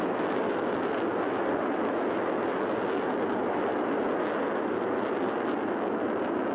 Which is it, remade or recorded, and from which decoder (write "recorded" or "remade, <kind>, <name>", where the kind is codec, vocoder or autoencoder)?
recorded